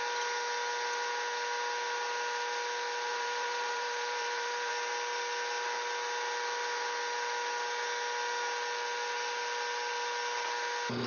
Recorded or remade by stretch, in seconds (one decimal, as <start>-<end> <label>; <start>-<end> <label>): 0.0-3.1 recorded; 3.1-4.7 remade; 4.7-11.1 recorded